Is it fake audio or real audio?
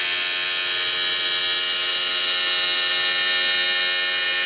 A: real